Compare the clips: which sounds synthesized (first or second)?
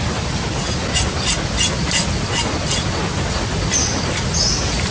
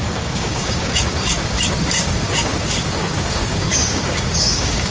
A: second